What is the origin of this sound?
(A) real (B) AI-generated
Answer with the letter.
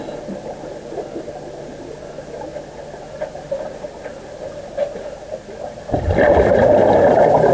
A